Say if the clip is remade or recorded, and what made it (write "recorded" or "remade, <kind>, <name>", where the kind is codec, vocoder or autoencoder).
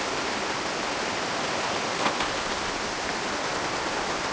recorded